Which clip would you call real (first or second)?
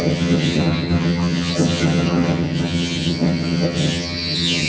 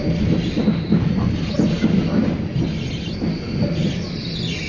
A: second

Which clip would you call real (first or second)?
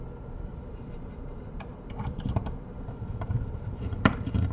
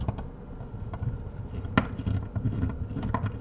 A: second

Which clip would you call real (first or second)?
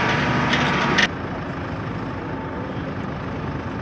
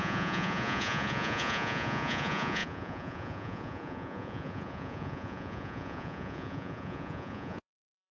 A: first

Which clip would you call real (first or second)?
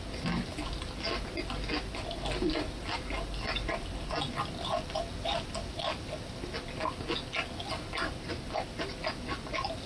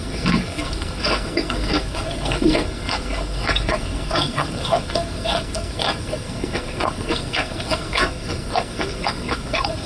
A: first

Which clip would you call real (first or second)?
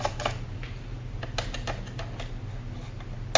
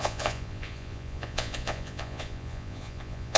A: first